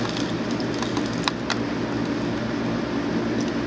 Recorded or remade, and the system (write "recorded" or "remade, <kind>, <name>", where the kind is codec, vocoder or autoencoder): recorded